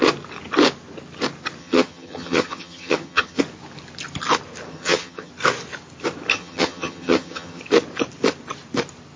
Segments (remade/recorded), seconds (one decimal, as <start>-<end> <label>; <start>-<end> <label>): 0.0-1.6 recorded; 1.6-3.4 remade; 3.4-4.7 recorded; 4.7-5.3 remade; 5.3-6.3 recorded; 6.3-7.6 remade; 7.6-9.2 recorded